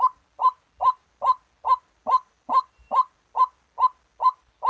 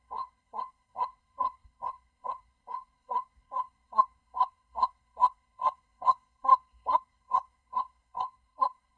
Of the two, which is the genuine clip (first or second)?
first